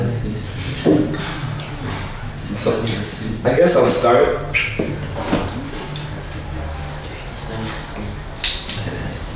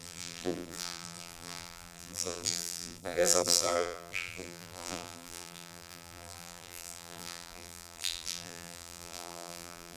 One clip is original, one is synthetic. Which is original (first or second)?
first